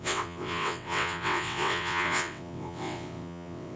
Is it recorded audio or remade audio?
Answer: remade